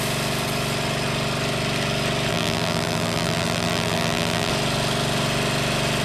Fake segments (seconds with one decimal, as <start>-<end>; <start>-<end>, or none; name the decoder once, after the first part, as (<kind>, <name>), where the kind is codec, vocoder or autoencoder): 2.3-4.5 (vocoder, BigVGAN v2)